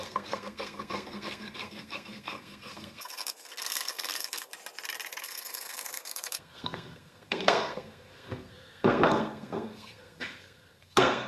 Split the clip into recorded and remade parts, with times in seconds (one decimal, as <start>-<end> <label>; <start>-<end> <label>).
0.0-4.5 remade; 4.5-5.2 recorded; 5.2-11.3 remade